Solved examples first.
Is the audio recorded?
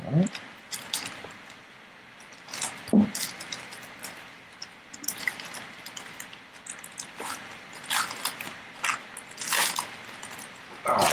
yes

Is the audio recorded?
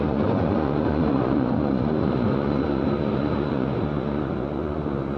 no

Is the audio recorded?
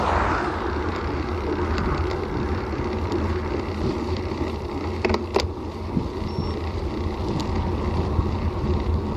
yes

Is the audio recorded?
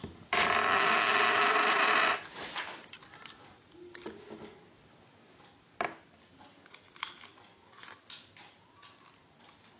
yes